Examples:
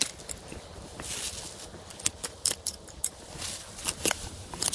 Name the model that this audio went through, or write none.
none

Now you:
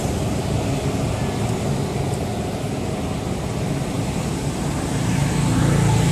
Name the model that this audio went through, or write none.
none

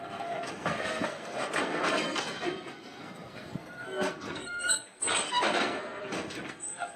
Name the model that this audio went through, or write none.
codec, SNAC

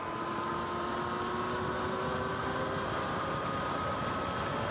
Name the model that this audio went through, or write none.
none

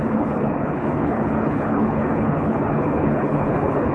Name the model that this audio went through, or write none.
codec, HILCodec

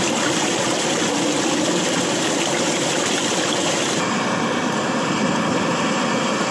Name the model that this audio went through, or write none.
none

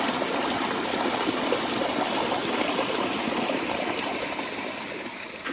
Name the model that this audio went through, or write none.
none